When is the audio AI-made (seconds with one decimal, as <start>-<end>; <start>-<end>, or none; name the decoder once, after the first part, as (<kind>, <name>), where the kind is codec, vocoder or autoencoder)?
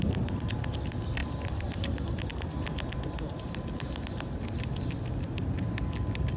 none